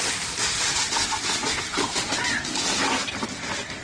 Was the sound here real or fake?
real